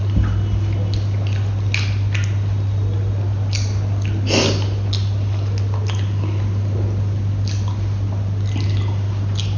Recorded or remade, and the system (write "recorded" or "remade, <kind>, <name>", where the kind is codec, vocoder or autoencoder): recorded